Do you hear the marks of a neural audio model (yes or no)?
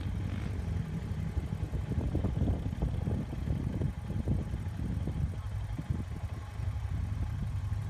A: no